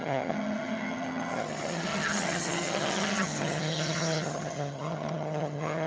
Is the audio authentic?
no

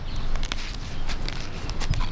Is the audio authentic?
yes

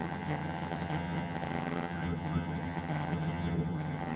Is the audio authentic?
no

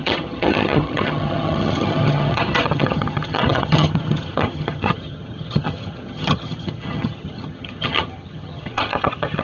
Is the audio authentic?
no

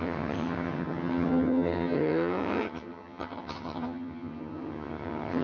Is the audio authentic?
no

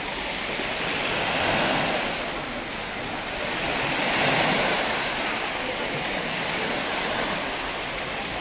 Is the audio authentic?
yes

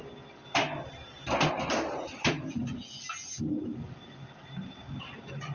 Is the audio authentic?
yes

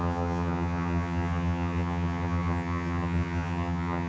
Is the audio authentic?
no